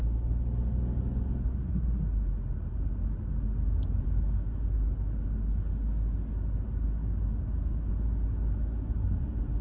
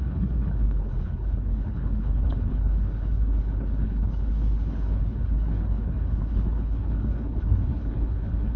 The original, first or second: first